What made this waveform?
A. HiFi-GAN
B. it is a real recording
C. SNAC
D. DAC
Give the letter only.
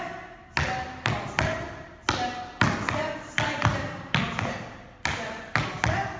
B